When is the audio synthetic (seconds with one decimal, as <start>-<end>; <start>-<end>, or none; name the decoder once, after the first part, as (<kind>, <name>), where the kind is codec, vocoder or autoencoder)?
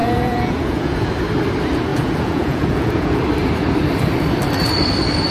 0.0-1.1 (vocoder, Vocos); 1.9-3.2